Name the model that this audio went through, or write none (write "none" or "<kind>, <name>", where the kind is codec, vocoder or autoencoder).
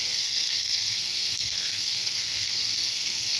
codec, SNAC